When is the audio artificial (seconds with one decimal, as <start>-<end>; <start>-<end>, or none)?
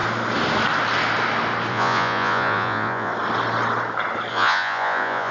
1.7-3.1; 4.3-5.3